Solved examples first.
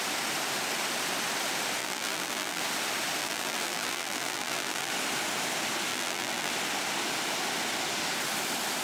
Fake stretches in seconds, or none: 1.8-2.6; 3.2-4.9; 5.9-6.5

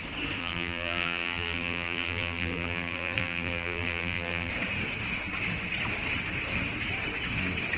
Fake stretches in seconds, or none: 0.4-4.5

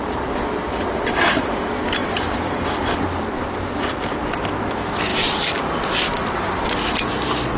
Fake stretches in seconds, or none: 2.0-4.0; 5.1-6.1

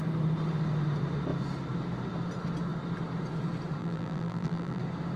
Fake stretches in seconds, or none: 3.8-4.8

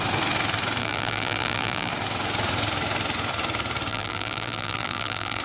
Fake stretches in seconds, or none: 0.8-1.9; 3.9-5.4